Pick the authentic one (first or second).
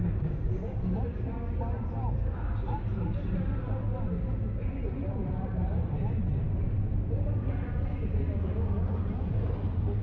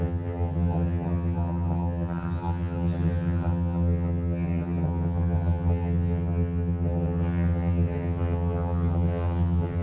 first